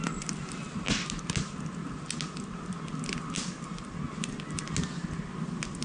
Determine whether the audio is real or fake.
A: real